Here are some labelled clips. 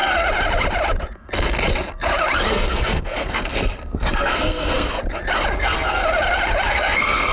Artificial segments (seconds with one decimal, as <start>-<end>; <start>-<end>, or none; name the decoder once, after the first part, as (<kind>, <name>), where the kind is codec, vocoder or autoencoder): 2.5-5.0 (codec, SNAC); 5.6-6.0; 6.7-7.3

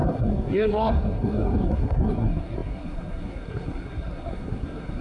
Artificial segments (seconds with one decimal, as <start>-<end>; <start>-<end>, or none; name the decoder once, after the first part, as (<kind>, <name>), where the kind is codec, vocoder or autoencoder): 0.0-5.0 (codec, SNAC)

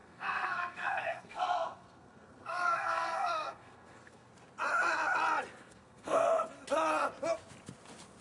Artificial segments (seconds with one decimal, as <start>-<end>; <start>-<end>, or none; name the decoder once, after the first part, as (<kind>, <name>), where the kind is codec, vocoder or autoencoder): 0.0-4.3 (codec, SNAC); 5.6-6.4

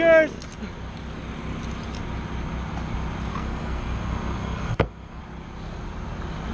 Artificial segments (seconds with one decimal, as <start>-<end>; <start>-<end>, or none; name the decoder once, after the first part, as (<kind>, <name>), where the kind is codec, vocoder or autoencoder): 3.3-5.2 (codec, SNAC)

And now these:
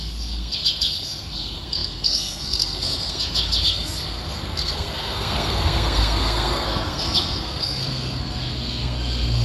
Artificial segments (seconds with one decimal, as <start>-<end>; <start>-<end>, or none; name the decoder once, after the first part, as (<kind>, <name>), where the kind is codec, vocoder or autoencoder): 0.0-9.4 (codec, SNAC)